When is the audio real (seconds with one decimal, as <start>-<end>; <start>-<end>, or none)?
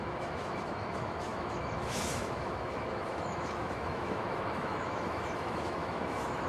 none